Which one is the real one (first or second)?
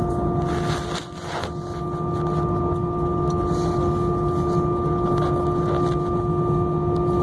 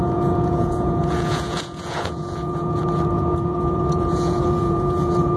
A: first